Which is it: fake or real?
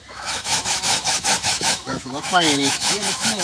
fake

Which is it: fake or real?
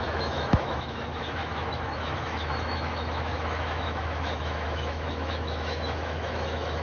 fake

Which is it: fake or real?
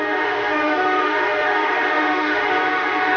fake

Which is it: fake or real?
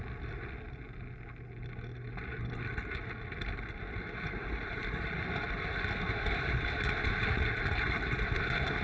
real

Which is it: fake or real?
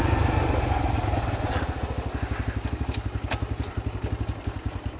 real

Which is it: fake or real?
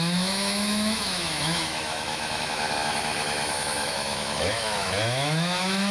fake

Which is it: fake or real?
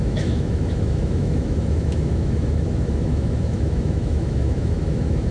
fake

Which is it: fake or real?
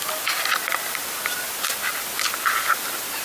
real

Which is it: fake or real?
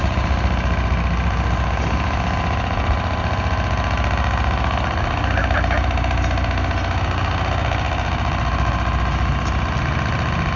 real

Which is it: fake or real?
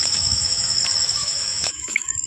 fake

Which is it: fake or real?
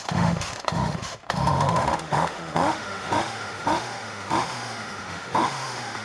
fake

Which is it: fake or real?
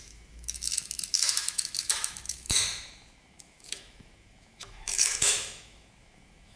fake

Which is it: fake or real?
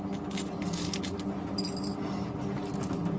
real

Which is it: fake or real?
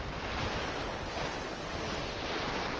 real